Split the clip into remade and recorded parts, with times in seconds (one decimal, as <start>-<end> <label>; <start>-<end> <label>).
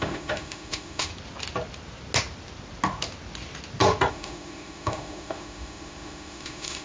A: 0.0-1.1 remade; 1.1-4.1 recorded; 4.1-6.8 remade